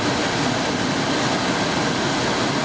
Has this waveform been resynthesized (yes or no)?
no